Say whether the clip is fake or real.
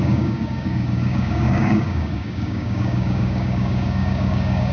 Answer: fake